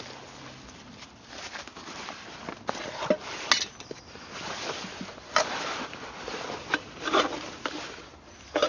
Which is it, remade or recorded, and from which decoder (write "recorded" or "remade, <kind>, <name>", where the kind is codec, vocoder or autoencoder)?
recorded